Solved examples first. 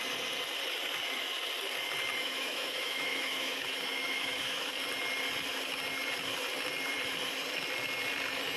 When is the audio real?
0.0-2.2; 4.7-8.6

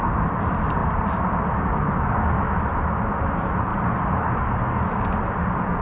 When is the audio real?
0.0-0.8; 1.4-3.7; 4.6-5.8

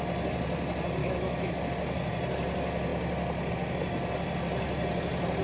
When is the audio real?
0.0-1.0; 1.6-5.4

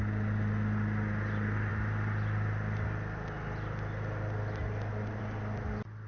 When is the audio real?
0.0-6.1

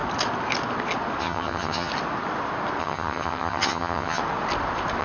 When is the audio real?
0.0-1.2; 1.9-2.8; 4.2-5.0

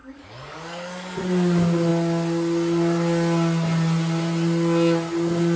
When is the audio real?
1.2-5.6